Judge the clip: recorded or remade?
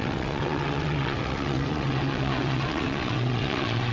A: remade